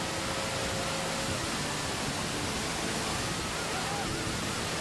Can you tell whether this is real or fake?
real